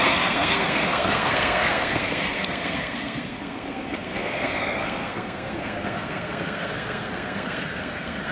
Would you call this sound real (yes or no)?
no